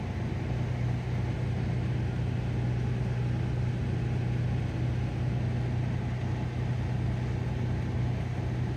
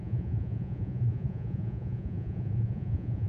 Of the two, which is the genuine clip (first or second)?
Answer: first